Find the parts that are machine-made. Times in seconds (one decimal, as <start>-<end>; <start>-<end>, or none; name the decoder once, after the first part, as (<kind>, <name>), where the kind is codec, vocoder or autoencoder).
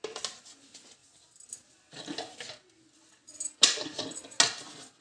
none